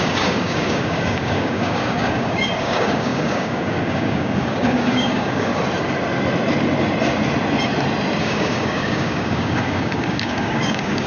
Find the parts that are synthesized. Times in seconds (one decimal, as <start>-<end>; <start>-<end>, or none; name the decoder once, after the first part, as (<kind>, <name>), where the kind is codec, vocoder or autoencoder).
0.0-5.5 (codec, DAC); 8.2-11.1